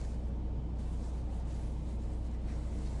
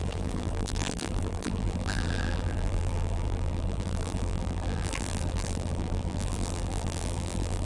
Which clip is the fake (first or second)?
second